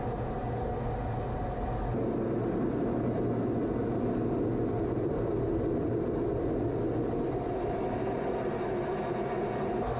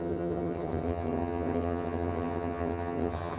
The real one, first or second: first